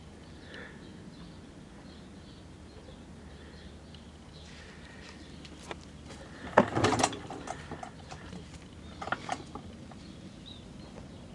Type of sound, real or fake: real